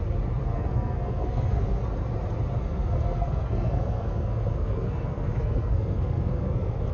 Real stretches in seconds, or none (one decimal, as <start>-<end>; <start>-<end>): 0.0-0.4; 1.8-2.6

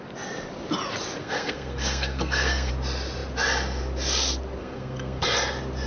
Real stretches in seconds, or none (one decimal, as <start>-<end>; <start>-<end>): 0.0-1.2; 2.7-4.6; 5.2-5.9

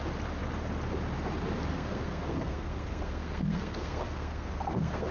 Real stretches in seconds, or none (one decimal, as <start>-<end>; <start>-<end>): 0.0-1.7

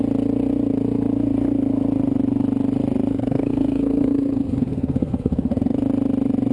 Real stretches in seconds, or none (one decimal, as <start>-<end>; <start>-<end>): 0.0-3.1; 5.8-6.5

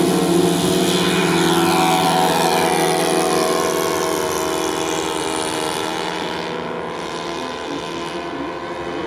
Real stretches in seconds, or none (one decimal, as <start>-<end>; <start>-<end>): 0.0-9.1

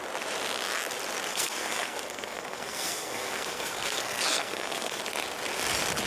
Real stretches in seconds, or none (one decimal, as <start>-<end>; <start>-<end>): 0.0-1.3; 5.0-6.1

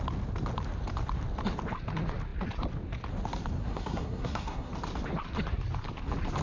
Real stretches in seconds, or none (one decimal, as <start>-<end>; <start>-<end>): 0.0-3.6; 4.7-6.4

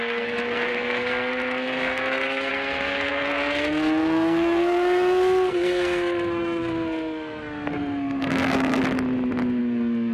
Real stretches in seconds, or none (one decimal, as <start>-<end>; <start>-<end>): 8.8-9.6